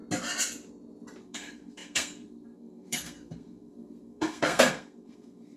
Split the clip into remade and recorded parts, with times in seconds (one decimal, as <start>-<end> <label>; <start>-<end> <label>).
0.0-1.2 recorded; 1.2-5.6 remade